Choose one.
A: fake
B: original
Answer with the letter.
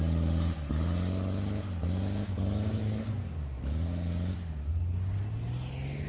B